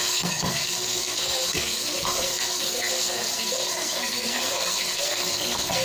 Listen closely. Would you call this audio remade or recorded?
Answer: remade